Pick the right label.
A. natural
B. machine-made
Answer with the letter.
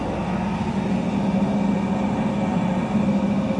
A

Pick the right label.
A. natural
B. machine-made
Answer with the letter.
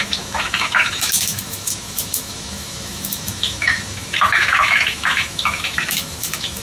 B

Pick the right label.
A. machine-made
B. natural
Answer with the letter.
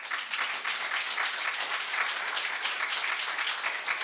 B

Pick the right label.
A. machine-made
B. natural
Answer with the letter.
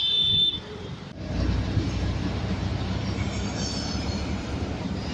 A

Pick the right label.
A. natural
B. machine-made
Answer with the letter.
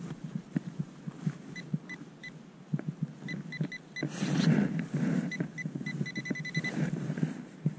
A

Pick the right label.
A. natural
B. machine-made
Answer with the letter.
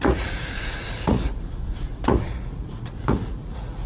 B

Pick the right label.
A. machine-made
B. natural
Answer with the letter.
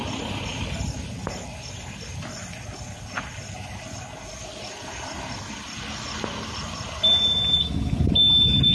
B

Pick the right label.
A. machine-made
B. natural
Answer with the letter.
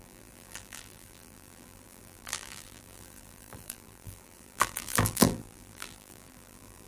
A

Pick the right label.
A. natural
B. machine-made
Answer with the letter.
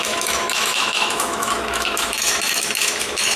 B